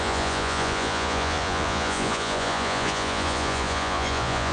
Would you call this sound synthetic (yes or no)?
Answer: yes